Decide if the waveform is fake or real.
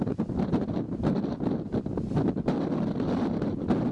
real